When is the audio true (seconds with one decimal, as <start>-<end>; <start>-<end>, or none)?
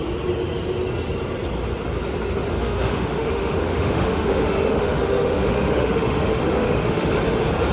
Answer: 0.0-2.5; 7.1-7.7